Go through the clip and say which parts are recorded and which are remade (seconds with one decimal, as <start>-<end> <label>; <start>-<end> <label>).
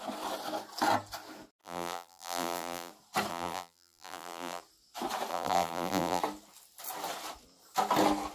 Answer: 0.0-1.6 recorded; 1.6-2.9 remade; 2.9-3.3 recorded; 3.3-4.6 remade; 4.6-5.3 recorded; 5.3-6.2 remade; 6.2-8.3 recorded